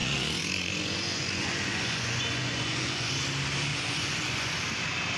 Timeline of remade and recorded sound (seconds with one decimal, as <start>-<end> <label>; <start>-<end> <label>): 0.0-3.1 remade; 3.1-3.7 recorded; 3.7-4.5 remade; 4.5-5.2 recorded